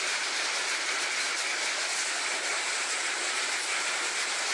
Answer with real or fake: real